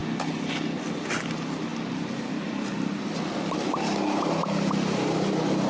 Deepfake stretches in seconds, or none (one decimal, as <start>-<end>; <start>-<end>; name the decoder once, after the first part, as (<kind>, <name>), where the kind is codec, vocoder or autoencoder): none